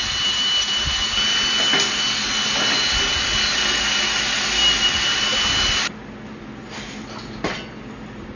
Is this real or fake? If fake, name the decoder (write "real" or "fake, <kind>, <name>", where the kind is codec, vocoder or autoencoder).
real